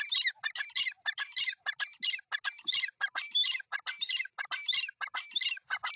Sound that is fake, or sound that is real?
real